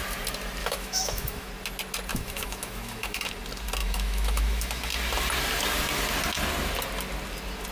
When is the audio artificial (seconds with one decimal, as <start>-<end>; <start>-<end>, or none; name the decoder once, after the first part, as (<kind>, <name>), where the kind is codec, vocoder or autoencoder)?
0.6-1.5 (autoencoder, DAC-VAE); 2.1-3.3; 3.8-4.9